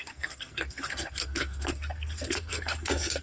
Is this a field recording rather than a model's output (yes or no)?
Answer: no